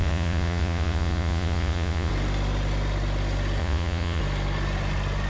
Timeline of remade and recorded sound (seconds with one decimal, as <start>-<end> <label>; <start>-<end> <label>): 0.0-2.1 remade; 2.1-3.6 recorded; 3.6-4.2 remade; 4.2-5.3 recorded